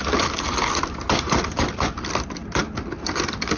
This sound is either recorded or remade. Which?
recorded